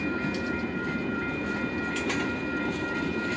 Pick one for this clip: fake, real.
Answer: fake